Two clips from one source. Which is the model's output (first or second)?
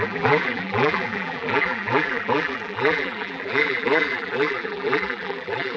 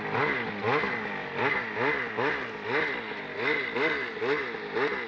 first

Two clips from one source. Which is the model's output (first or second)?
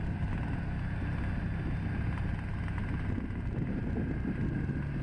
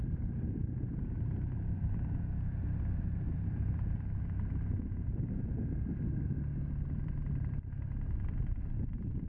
second